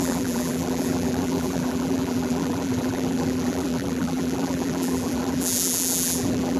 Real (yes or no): no